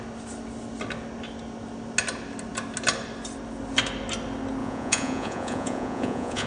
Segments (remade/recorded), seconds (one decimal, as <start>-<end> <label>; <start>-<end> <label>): 0.0-4.6 recorded; 4.6-6.5 remade